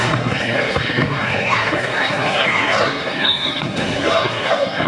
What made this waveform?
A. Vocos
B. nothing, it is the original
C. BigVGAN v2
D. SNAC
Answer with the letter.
D